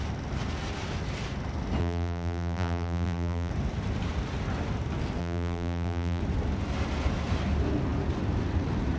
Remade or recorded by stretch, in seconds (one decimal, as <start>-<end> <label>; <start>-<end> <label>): 0.0-1.8 recorded; 1.8-3.5 remade; 3.5-5.2 recorded; 5.2-6.2 remade; 6.2-9.0 recorded